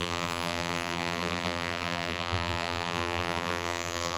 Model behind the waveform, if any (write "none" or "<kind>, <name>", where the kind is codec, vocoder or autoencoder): vocoder, BigVGAN v2